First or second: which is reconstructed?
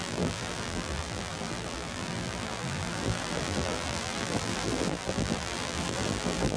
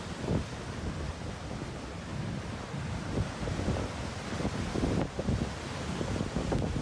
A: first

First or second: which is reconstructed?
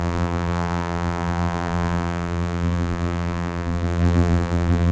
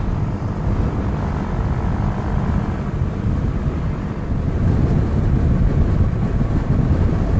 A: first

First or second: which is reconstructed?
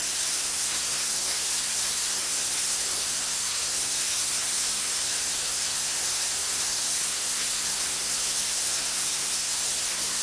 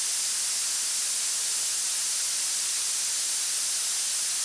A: first